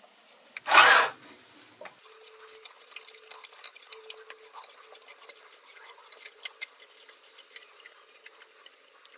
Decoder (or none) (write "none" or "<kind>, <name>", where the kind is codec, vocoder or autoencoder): none